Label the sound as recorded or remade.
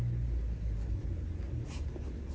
recorded